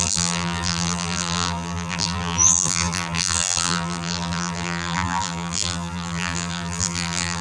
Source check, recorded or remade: remade